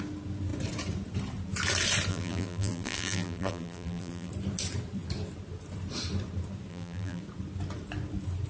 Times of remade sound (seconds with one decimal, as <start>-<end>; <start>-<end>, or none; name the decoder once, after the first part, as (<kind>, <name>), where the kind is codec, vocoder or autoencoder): 2.1-4.3 (vocoder, BigVGAN v2); 6.7-7.2

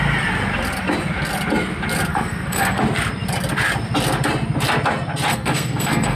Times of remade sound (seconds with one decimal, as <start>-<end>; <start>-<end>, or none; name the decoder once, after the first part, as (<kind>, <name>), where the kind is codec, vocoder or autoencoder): 2.1-2.8 (codec, SNAC); 5.3-6.2